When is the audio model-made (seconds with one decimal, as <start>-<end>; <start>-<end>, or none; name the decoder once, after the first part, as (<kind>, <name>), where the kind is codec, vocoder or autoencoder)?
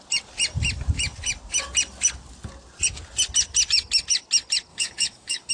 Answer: 4.7-5.5 (codec, DAC)